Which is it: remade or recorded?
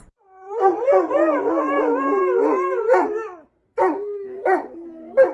remade